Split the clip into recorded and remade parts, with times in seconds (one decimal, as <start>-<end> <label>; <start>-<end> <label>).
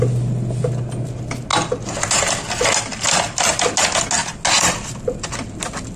0.0-6.0 recorded